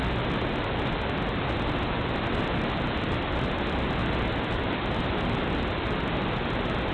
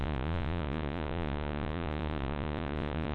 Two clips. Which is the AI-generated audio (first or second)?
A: second